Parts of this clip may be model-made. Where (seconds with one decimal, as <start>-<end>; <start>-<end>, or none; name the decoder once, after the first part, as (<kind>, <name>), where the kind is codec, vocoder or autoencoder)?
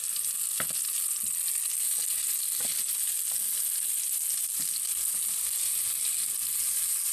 none